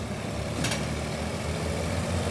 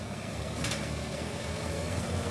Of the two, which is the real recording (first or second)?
first